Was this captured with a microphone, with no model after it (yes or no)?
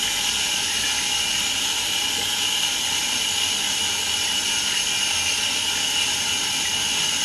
yes